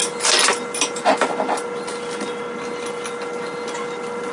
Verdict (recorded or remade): recorded